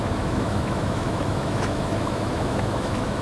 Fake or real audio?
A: fake